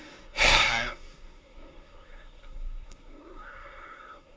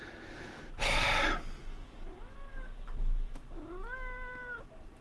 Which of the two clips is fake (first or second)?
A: first